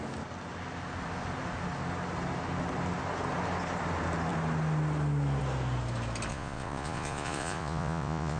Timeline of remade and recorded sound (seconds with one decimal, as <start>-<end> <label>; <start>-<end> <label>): 0.0-6.3 recorded; 6.3-8.4 remade